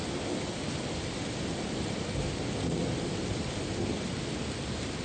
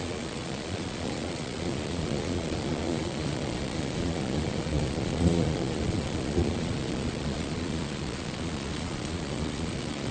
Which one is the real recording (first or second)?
first